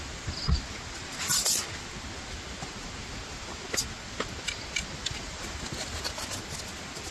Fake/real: real